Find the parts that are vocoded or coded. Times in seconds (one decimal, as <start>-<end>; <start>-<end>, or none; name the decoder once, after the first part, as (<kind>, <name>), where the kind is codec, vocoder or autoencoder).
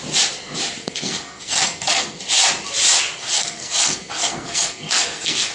0.8-2.2 (codec, SNAC); 3.3-5.5